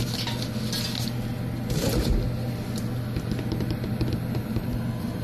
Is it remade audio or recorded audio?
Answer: recorded